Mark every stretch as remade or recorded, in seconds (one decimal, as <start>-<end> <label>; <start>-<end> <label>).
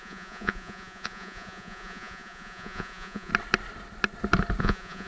0.0-3.3 remade; 3.3-4.6 recorded; 4.6-5.1 remade